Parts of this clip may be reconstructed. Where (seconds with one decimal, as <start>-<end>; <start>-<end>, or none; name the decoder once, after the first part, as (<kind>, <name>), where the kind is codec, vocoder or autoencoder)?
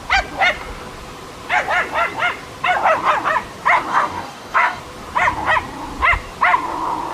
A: 3.9-4.8 (codec, DAC)